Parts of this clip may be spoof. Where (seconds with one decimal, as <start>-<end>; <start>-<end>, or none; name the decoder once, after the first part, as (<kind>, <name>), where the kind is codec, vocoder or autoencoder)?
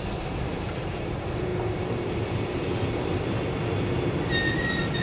none